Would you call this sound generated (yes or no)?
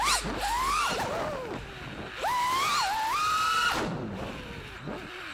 no